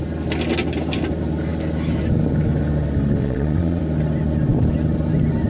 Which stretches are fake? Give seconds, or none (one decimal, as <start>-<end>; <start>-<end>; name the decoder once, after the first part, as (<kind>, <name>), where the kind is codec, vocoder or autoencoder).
3.2-3.8 (vocoder, Vocos)